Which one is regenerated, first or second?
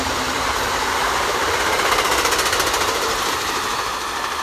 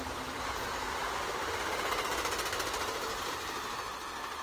first